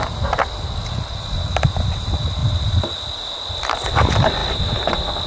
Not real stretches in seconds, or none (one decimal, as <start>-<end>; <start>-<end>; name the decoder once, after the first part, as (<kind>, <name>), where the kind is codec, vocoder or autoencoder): none